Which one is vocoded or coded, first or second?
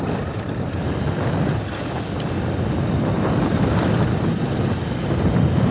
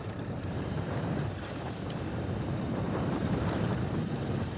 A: second